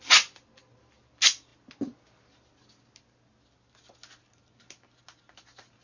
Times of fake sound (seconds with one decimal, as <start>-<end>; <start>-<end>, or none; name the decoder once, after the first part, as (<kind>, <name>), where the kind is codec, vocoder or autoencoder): none